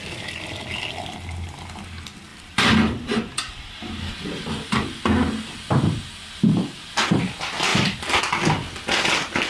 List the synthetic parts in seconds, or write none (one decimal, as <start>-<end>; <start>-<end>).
2.3-5.0; 7.7-8.2